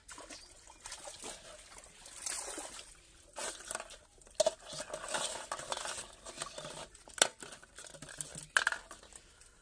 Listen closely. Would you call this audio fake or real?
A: real